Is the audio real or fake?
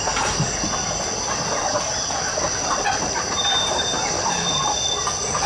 real